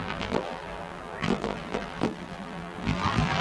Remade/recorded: remade